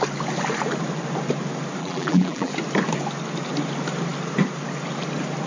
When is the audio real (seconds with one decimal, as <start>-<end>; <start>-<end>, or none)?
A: 0.0-1.8; 2.5-5.5